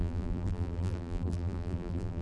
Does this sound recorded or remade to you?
remade